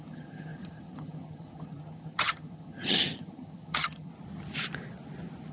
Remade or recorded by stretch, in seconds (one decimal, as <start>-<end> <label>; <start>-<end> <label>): 0.0-4.1 remade; 4.1-5.5 recorded